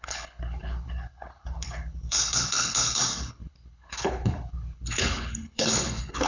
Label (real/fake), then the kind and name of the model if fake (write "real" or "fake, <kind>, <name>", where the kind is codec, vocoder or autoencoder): fake, codec, HILCodec